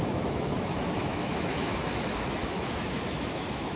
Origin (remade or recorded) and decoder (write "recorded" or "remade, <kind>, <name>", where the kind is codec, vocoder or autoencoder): remade, autoencoder, DAC-VAE